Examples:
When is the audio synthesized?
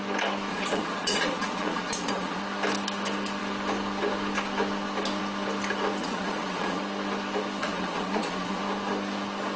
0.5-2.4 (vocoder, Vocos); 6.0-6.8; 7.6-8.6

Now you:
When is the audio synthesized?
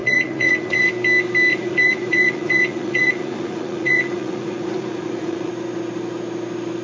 0.0-0.9 (vocoder, Vocos); 1.5-5.5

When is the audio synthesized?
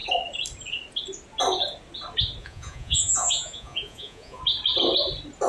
2.4-4.4 (vocoder, Vocos)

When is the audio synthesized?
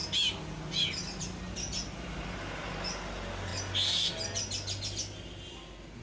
none